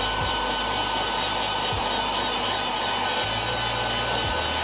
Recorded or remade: recorded